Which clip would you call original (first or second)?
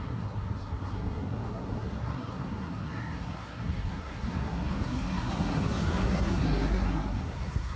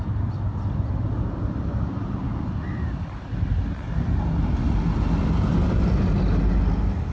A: second